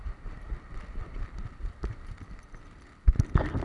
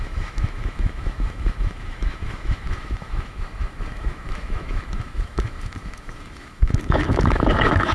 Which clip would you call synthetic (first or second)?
second